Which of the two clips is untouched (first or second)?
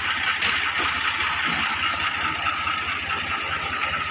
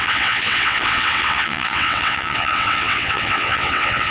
first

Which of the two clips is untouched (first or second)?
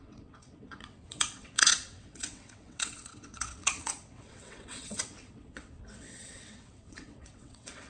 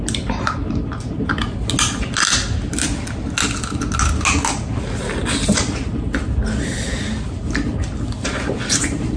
second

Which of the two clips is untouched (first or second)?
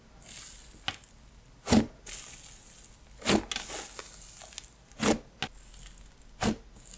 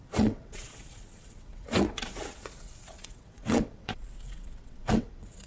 first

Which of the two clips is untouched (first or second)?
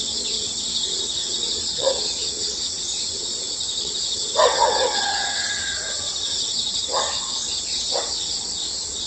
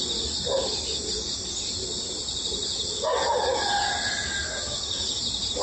second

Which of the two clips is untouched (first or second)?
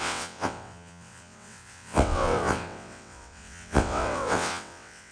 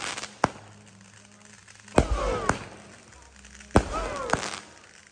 second